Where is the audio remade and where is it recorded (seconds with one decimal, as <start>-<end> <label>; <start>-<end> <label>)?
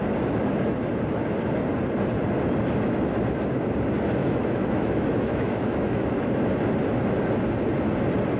0.0-4.2 recorded; 4.2-6.0 remade; 6.0-8.4 recorded